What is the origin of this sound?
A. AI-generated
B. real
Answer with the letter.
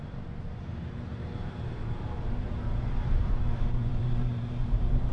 A